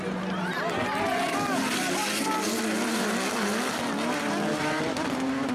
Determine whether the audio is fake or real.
real